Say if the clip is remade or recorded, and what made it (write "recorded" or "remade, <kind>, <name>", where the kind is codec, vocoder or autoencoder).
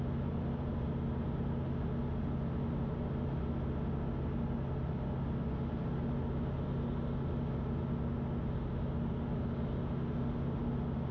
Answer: recorded